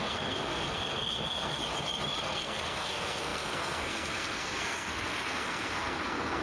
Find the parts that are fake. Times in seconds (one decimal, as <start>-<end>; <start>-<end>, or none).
0.0-1.6; 2.2-6.4